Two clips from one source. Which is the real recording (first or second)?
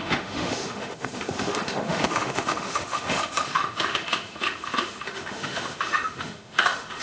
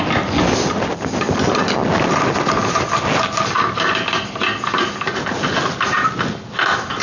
second